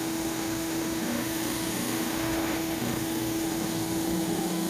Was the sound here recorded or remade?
remade